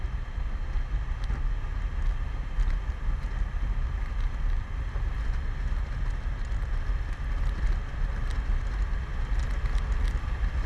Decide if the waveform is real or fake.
real